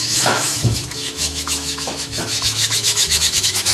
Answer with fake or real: fake